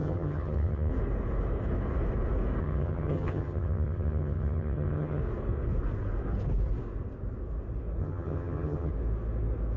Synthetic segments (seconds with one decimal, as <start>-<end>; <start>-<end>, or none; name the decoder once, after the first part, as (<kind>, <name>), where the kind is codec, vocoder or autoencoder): 0.0-0.9 (vocoder, HiFi-GAN); 2.6-5.2; 8.0-8.9